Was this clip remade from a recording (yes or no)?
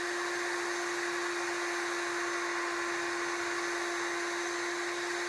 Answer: no